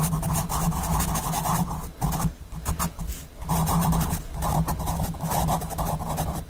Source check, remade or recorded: recorded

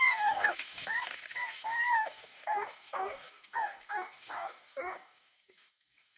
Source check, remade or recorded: remade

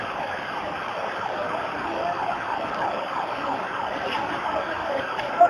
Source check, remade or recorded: remade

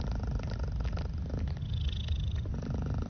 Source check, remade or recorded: recorded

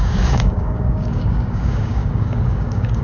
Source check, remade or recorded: remade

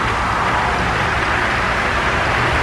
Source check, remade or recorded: recorded